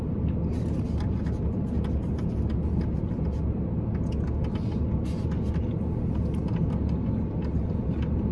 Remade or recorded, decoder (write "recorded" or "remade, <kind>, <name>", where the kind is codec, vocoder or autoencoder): recorded